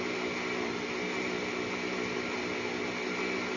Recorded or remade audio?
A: recorded